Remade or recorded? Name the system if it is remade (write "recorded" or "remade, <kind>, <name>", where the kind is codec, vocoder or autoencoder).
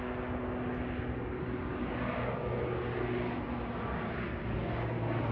recorded